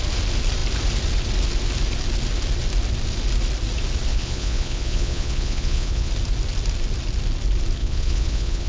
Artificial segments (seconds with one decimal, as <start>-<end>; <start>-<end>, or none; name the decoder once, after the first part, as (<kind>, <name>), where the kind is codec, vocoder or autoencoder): 4.1-6.1 (vocoder, Vocos); 7.8-8.7